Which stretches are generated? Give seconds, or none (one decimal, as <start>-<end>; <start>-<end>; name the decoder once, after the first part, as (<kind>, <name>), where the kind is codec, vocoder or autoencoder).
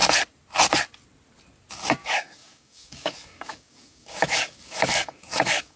2.0-5.8 (codec, DAC)